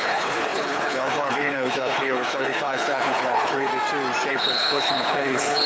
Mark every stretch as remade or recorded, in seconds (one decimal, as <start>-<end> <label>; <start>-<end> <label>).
0.0-3.7 remade; 3.7-4.3 recorded; 4.3-5.7 remade